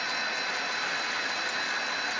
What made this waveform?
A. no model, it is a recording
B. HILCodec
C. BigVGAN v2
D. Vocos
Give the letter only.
A